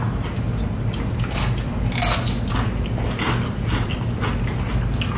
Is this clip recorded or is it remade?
recorded